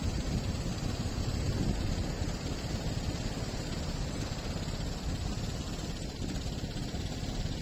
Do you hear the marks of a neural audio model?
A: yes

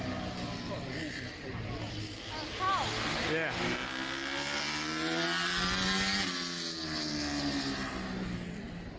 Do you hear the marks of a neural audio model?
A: no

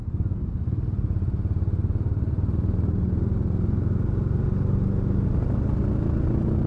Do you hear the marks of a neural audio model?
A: no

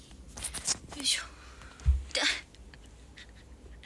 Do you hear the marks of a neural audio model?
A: no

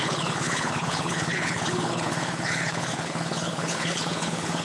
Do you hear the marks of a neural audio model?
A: yes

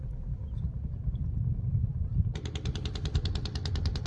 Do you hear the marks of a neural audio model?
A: no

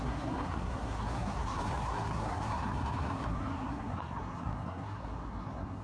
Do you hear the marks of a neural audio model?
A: yes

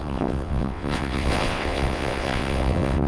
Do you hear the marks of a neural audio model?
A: yes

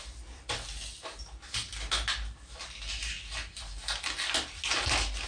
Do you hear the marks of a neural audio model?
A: no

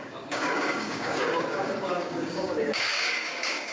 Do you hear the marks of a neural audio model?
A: yes